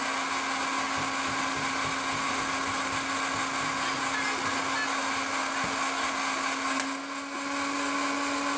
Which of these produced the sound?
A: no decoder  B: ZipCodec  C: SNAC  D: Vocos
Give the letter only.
A